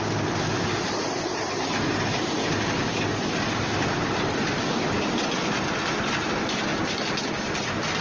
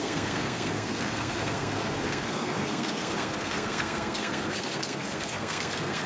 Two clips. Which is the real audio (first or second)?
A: first